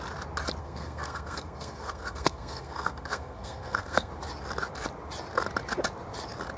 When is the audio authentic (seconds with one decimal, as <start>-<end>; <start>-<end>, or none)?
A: 0.0-0.6; 4.1-6.6